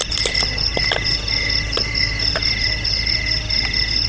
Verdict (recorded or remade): recorded